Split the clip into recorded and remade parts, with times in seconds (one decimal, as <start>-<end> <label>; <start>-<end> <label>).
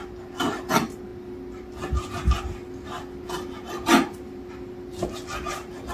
0.0-5.9 recorded